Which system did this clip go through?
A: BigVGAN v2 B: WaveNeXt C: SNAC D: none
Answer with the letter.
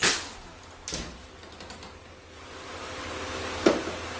D